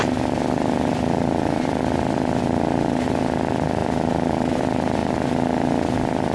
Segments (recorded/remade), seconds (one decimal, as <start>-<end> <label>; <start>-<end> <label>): 0.0-6.3 recorded